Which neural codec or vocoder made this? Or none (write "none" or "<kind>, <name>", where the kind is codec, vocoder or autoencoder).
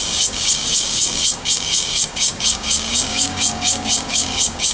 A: codec, DAC